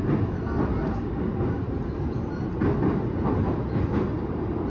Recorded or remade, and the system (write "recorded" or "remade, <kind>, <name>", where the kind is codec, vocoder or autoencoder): recorded